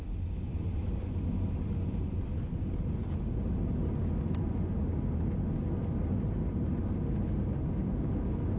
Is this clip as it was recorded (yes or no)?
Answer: yes